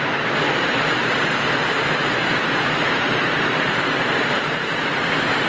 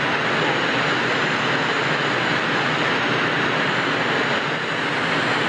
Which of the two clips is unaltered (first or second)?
second